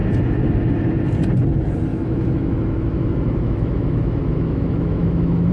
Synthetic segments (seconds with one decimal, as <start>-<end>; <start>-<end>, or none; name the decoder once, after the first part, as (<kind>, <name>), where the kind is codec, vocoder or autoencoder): 1.9-5.5 (autoencoder, DAC-VAE)